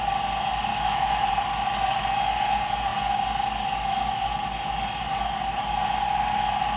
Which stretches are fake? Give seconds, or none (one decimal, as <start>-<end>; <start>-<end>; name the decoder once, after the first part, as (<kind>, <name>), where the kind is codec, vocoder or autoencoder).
0.7-1.3 (autoencoder, DAC-VAE)